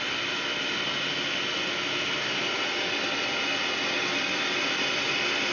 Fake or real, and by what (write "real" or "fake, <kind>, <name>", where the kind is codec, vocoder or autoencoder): real